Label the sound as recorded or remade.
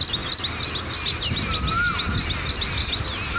recorded